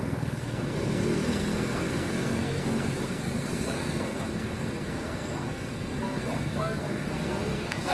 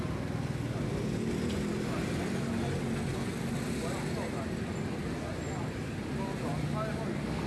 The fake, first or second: first